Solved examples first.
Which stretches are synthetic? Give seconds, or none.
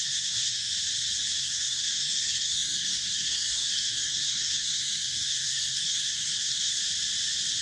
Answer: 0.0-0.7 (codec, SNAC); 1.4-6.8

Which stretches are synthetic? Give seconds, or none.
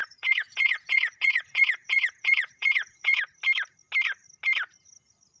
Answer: 0.0-3.2 (vocoder, Vocos)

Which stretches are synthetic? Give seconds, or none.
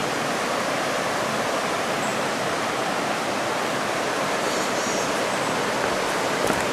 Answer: none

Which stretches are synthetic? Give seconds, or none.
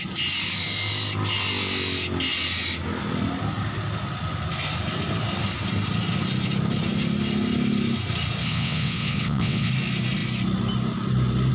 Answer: 8.4-9.7 (vocoder, WaveNeXt)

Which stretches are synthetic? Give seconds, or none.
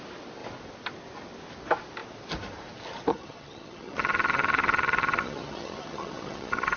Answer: 3.1-6.8 (vocoder, HiFi-GAN)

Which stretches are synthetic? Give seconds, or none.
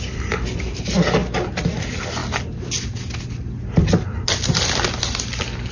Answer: none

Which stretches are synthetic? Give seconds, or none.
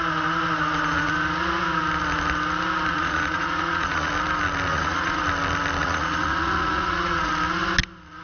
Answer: 2.9-4.1 (vocoder, Vocos); 4.7-5.2; 5.8-7.3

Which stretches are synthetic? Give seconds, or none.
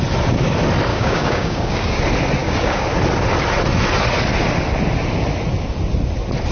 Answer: 0.9-2.0 (codec, DAC); 2.4-2.9